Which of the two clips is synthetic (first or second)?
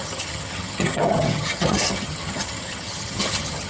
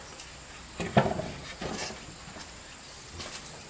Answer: first